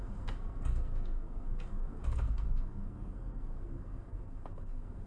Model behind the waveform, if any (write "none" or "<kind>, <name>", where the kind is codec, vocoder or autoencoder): codec, SNAC